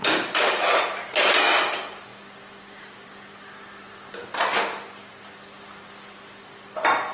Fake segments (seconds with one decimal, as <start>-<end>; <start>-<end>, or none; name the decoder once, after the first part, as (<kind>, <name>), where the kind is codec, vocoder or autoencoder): none

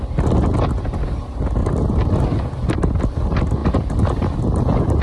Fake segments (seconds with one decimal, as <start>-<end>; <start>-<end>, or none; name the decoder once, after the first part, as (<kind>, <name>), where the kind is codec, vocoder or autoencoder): 1.6-3.0 (vocoder, BigVGAN v2); 3.6-4.4

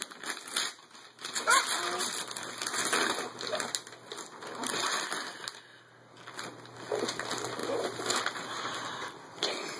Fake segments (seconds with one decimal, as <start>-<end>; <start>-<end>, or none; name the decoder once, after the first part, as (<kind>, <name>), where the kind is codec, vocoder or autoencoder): 1.2-2.5 (vocoder, BigVGAN v2); 7.6-8.2